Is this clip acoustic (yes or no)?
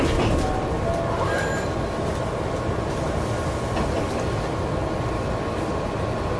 yes